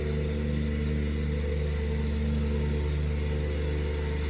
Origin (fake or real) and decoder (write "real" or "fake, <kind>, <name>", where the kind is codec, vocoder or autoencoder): real